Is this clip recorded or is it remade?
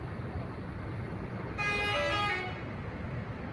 recorded